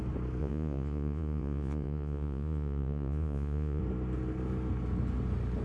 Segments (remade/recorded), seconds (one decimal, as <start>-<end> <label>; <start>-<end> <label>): 0.0-0.4 recorded; 0.4-3.8 remade; 3.8-5.6 recorded